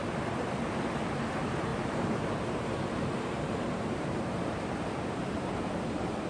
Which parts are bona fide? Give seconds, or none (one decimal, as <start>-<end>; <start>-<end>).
0.0-1.7; 5.5-6.3